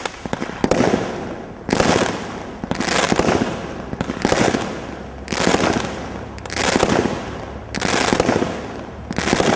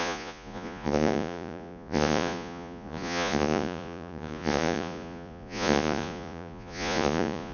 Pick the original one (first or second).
first